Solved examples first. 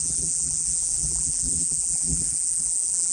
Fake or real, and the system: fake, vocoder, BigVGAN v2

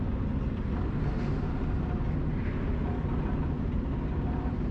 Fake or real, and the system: real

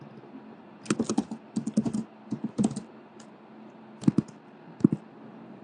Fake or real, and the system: real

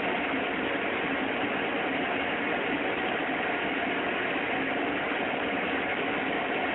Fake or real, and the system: real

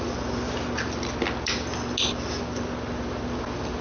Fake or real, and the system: real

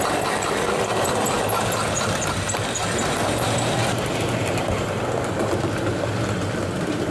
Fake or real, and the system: fake, vocoder, BigVGAN v2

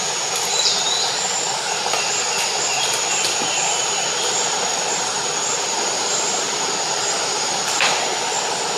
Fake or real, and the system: real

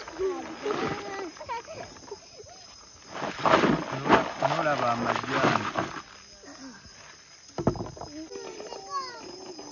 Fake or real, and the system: real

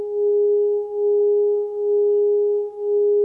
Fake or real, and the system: real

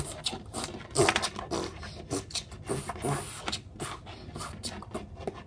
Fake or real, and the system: real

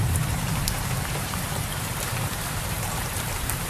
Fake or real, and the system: fake, vocoder, BigVGAN v2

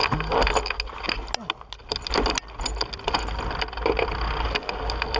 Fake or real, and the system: real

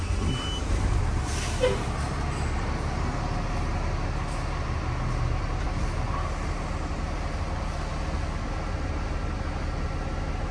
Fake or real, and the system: real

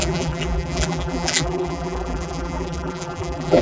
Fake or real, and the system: fake, vocoder, BigVGAN v2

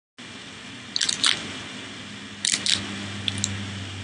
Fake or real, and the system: real